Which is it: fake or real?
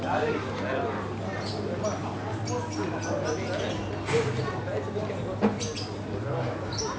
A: real